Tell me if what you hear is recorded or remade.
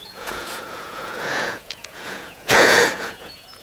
remade